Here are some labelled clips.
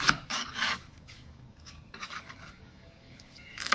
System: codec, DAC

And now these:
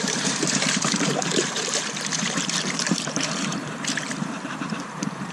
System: vocoder, BigVGAN v2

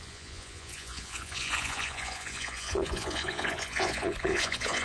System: vocoder, Vocos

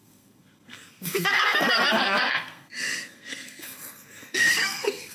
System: codec, SNAC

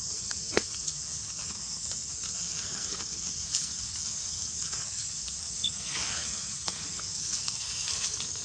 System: codec, SNAC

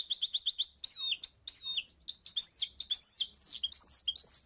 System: none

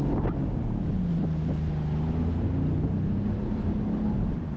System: none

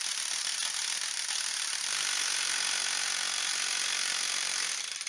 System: vocoder, BigVGAN v2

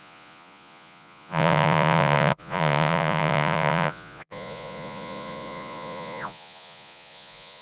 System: vocoder, Vocos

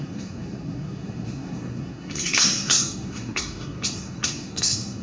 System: codec, SNAC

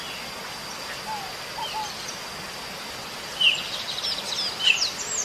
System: none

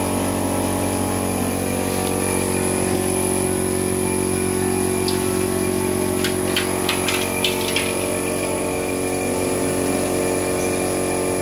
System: none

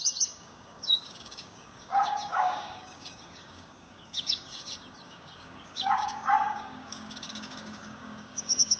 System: codec, DAC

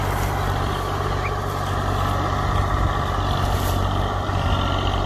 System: none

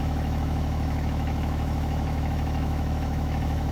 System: autoencoder, DAC-VAE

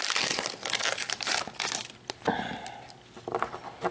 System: none